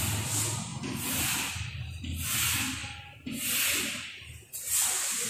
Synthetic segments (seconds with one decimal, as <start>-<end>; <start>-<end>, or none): none